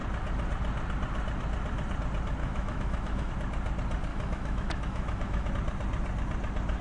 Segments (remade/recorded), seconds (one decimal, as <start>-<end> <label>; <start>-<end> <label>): 0.0-2.4 recorded; 2.4-3.3 remade; 3.3-4.1 recorded; 4.1-5.5 remade; 5.5-6.8 recorded